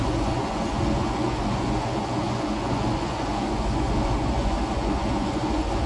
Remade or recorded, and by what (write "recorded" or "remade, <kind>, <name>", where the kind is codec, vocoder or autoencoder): remade, vocoder, Vocos